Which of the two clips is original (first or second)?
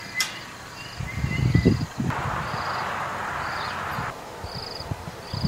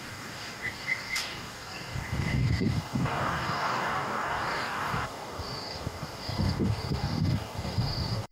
first